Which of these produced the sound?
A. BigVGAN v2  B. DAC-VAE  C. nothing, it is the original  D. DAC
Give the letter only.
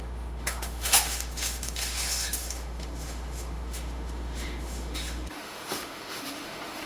B